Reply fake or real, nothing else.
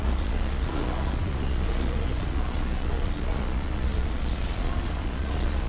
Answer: fake